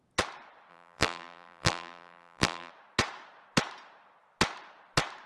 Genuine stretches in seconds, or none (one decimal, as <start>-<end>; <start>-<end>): 0.0-0.7; 2.7-5.3